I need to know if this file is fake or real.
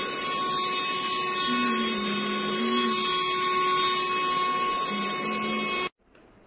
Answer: real